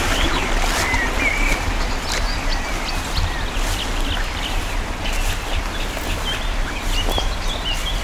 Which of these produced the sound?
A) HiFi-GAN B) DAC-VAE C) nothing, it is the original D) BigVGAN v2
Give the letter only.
C